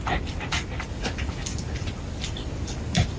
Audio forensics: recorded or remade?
recorded